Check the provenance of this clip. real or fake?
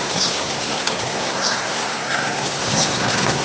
fake